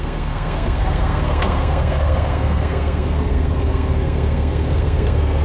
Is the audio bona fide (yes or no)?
no